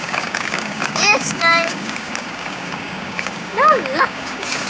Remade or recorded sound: remade